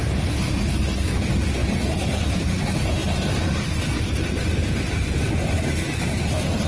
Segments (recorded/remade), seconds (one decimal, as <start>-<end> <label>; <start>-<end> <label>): 0.0-1.6 recorded; 1.6-2.4 remade; 2.4-6.7 recorded